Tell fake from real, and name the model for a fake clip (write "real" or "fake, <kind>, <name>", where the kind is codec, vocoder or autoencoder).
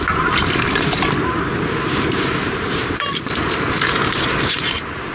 fake, vocoder, BigVGAN v2